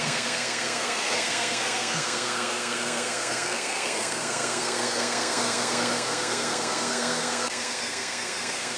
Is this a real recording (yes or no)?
no